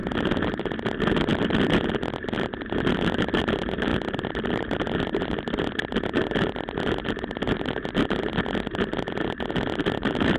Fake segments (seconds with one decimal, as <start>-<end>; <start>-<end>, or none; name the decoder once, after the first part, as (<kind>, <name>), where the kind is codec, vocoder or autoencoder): 0.0-0.5 (vocoder, BigVGAN v2); 3.9-5.2